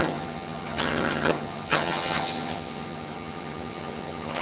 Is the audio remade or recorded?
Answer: remade